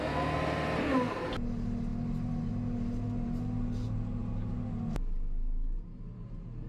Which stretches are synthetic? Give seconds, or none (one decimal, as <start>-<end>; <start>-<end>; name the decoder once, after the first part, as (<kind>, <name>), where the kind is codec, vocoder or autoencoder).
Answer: none